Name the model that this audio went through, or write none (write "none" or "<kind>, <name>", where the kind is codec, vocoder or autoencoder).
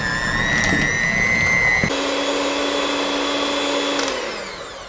none